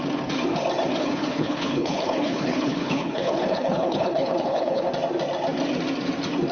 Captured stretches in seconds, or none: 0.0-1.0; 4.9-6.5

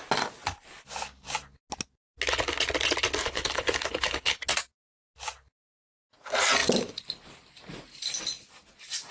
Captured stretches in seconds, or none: 0.0-3.2; 4.4-9.1

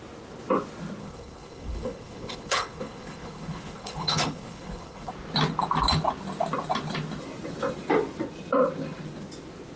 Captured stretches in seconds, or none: 0.0-1.0; 5.1-9.8